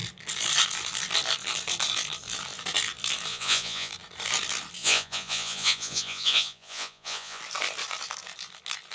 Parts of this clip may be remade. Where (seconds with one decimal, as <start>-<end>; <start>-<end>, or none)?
3.3-3.9; 4.8-7.4